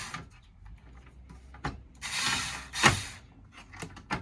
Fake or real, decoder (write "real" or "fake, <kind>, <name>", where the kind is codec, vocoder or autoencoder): real